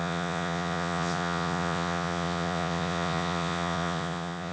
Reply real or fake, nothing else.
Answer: fake